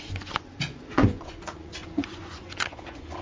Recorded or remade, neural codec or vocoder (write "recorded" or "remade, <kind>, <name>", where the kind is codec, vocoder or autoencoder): remade, vocoder, Vocos